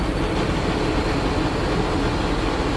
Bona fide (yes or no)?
yes